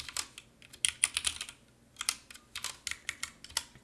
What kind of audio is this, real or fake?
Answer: real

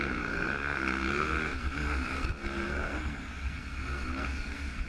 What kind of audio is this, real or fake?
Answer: fake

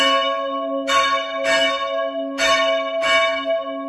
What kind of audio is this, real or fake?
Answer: real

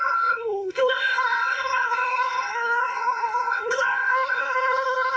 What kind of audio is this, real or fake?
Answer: fake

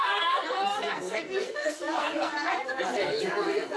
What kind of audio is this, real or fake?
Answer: fake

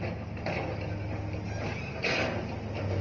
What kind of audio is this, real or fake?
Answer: real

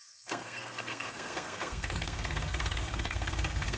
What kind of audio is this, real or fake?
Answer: fake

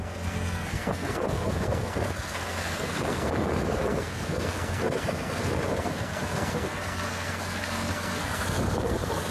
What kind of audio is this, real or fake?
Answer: fake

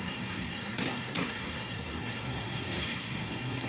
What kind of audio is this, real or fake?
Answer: fake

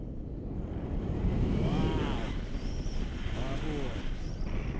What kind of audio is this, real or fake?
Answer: real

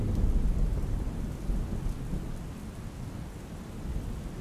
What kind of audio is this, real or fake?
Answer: real